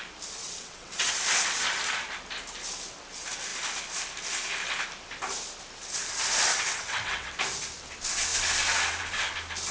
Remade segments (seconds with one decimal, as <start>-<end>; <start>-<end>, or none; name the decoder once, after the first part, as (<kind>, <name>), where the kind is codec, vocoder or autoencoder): 0.4-1.1 (vocoder, WaveNeXt); 6.5-7.3